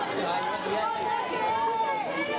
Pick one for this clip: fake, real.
real